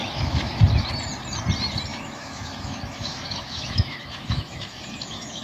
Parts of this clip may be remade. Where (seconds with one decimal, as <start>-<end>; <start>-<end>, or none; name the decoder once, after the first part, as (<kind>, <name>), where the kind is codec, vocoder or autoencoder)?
0.0-0.6 (autoencoder, DAC-VAE); 1.9-5.4